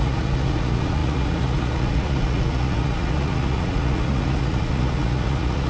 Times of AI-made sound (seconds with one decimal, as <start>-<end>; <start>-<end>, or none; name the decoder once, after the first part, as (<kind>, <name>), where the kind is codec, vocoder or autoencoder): 0.0-5.7 (vocoder, Vocos)